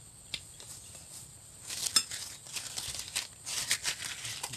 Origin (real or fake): real